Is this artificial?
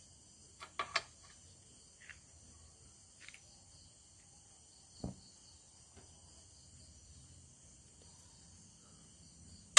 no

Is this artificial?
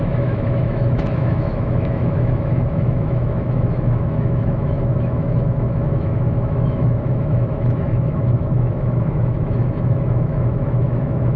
yes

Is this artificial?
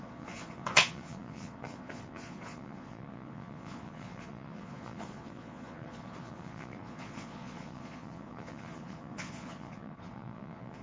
yes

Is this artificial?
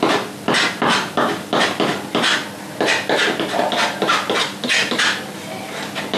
no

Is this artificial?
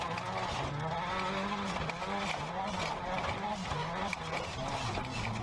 no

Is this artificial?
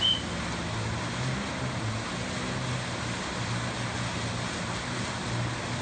no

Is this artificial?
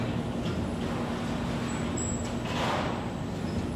no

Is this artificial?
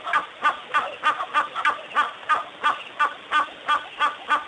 no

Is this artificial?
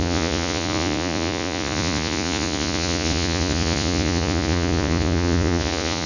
yes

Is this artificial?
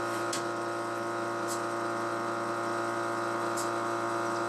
no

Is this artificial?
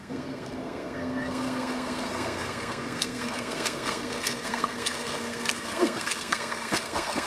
yes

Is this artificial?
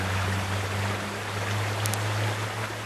no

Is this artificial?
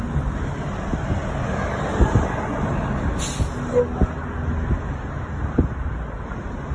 no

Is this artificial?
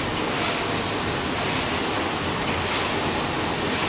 no